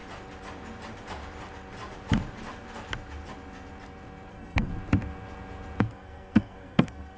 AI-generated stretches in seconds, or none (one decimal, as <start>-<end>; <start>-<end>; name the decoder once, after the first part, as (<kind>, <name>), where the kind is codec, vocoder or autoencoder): 4.3-4.7 (codec, SNAC); 5.8-7.2